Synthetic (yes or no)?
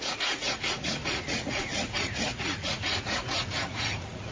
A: yes